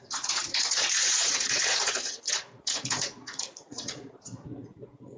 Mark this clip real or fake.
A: fake